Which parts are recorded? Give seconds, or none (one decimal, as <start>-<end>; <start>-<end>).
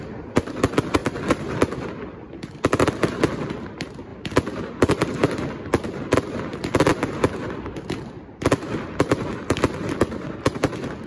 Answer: 0.0-1.0; 1.9-11.1